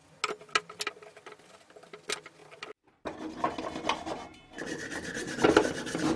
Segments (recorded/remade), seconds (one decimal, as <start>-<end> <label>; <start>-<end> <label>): 0.0-6.2 recorded